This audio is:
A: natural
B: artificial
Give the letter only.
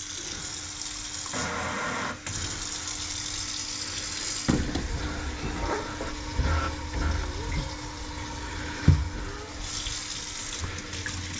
A